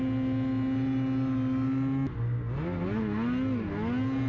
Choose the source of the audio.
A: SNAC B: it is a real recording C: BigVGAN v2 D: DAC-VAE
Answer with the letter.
B